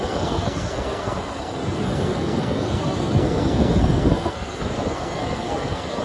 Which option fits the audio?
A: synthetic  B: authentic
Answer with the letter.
A